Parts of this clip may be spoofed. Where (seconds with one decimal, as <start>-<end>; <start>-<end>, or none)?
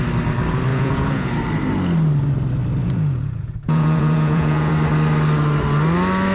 0.7-1.3; 2.8-4.7